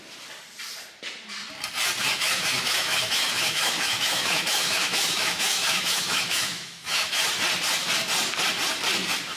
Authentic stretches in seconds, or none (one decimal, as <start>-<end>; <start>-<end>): 0.0-2.0; 7.2-9.4